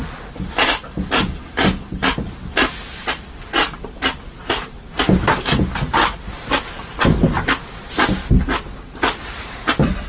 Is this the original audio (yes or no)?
yes